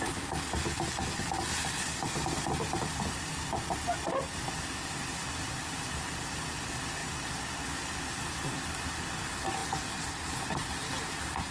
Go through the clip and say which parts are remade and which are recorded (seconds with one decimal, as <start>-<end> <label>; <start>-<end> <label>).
0.0-11.5 recorded